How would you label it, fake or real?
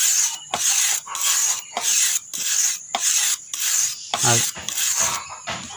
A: real